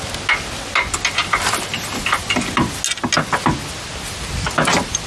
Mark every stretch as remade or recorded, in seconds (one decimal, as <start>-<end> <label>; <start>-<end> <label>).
0.0-5.1 recorded